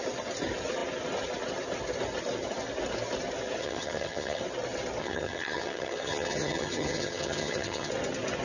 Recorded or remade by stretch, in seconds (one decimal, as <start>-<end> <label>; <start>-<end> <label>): 0.0-3.6 recorded; 3.6-4.4 remade; 4.4-5.0 recorded; 5.0-7.9 remade; 7.9-8.4 recorded